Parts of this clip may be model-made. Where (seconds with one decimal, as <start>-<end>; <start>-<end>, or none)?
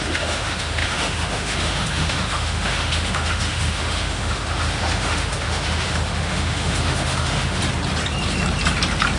0.0-7.6